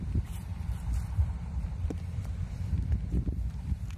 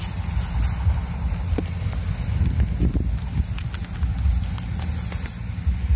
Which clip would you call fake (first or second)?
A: first